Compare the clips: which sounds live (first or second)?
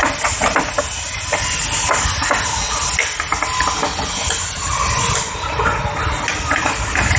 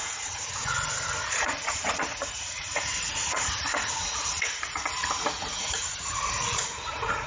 first